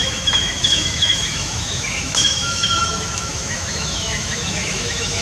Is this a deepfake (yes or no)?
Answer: yes